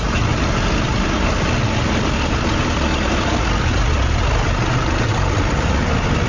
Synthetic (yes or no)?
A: no